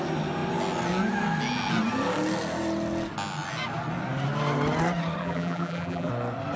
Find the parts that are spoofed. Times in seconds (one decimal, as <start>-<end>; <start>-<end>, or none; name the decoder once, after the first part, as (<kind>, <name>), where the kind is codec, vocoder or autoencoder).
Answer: 5.2-6.1 (vocoder, BigVGAN v2)

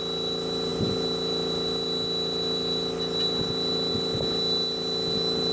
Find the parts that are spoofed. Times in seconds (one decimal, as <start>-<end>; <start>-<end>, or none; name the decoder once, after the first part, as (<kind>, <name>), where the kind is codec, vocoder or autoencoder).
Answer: none